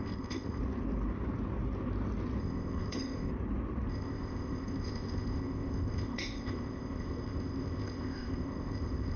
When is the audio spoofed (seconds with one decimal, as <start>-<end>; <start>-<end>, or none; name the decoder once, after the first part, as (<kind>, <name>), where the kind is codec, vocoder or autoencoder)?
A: 0.0-0.6 (codec, ZipCodec); 2.4-3.3; 3.9-9.2